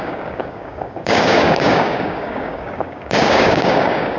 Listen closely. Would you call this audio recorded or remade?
remade